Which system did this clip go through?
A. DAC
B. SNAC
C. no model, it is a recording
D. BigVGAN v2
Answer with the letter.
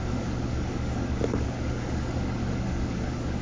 A